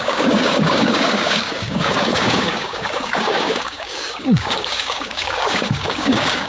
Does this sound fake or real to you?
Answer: fake